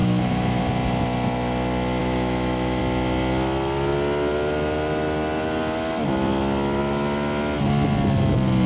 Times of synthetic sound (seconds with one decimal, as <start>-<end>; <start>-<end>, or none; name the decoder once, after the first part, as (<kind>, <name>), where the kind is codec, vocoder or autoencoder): 0.0-0.6 (autoencoder, DAC-VAE); 2.0-2.8